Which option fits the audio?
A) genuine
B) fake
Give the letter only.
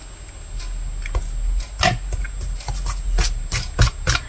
A